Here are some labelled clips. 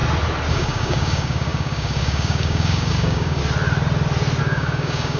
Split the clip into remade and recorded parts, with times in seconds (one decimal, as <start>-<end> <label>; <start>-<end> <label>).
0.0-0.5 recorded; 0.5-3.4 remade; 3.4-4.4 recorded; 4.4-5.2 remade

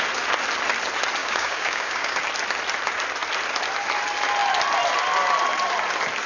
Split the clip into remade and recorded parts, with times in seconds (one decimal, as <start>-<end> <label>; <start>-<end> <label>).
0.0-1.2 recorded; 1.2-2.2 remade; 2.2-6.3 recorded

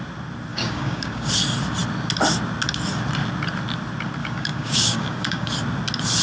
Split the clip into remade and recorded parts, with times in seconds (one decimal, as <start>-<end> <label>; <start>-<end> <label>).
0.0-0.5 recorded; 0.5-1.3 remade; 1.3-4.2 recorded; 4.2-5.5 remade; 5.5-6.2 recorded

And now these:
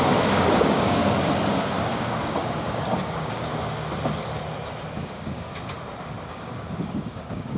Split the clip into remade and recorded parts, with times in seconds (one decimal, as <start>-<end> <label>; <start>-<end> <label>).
0.0-1.0 remade; 1.0-2.0 recorded; 2.0-3.5 remade; 3.5-5.0 recorded; 5.0-5.5 remade; 5.5-6.3 recorded; 6.3-7.6 remade

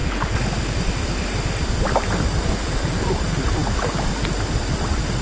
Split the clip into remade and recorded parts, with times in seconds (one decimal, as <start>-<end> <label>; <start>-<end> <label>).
0.0-5.2 recorded

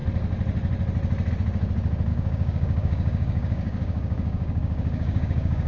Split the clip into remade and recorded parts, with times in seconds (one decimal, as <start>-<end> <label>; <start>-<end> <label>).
0.0-2.1 recorded; 2.1-5.7 remade